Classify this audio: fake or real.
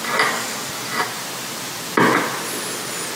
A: real